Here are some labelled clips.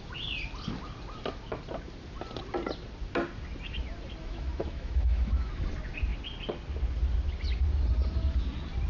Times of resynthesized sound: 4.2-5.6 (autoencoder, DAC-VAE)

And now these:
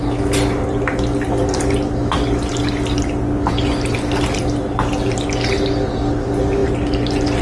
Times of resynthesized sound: none